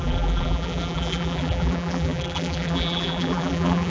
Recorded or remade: remade